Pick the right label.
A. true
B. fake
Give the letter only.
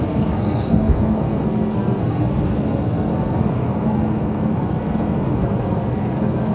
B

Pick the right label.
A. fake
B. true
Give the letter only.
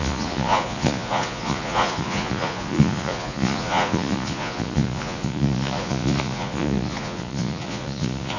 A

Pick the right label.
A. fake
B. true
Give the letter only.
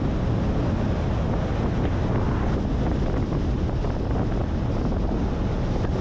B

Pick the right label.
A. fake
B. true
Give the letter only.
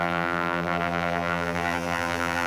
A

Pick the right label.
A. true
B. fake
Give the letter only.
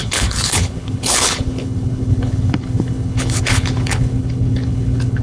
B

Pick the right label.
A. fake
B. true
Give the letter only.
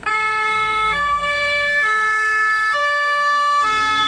A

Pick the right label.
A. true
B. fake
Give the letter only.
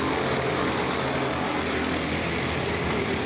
A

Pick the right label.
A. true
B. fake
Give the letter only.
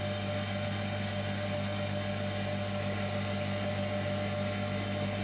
A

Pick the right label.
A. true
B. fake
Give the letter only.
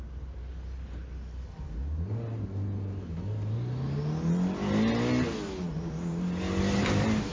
A